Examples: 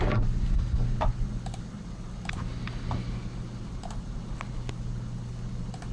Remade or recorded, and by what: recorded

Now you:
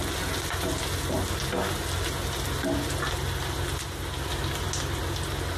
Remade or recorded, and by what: recorded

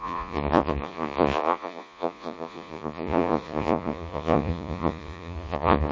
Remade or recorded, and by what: remade, vocoder, Vocos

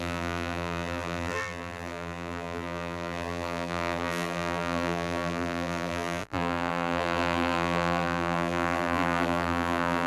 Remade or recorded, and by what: remade, vocoder, BigVGAN v2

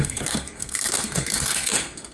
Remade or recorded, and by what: remade, codec, SNAC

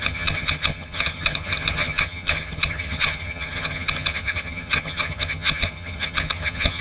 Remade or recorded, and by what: remade, vocoder, HiFi-GAN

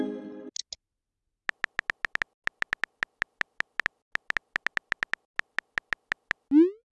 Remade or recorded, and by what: recorded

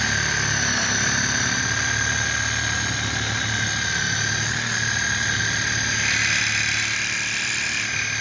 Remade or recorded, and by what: recorded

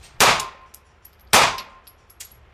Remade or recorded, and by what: recorded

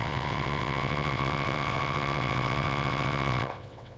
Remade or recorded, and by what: remade, vocoder, WaveNeXt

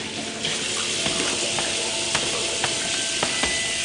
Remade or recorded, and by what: recorded